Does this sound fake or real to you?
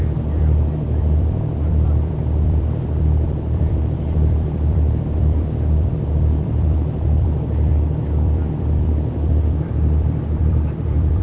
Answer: fake